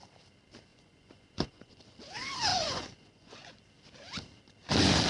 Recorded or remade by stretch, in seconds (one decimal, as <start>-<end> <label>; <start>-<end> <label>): 0.0-0.7 recorded; 0.7-1.8 remade; 1.8-2.5 recorded; 2.5-3.6 remade; 3.6-5.1 recorded